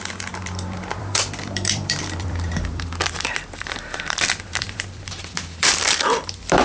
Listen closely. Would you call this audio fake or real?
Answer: fake